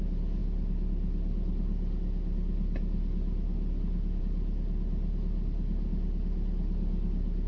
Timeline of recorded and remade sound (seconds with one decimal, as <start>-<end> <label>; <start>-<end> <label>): 0.0-7.5 recorded